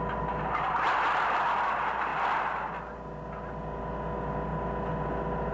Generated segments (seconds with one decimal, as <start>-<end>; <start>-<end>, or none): none